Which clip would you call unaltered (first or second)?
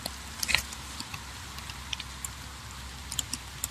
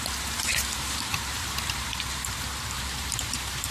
first